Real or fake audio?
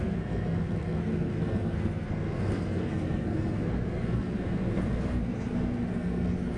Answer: fake